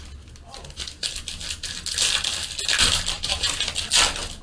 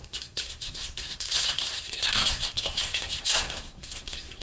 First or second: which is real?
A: first